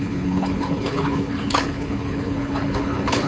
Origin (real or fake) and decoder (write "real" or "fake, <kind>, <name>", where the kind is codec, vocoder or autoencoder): fake, codec, HILCodec